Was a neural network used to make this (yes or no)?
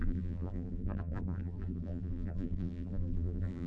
yes